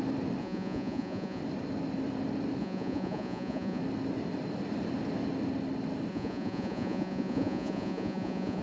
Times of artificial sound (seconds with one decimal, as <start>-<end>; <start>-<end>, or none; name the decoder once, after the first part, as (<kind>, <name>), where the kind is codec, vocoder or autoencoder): 0.4-1.4 (vocoder, Vocos); 2.6-3.8; 6.1-8.6